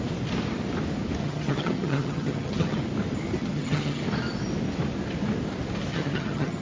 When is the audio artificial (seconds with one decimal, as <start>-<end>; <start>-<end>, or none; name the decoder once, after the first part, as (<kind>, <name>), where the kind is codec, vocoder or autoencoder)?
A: 1.2-2.8 (vocoder, HiFi-GAN); 3.4-4.0; 5.9-6.6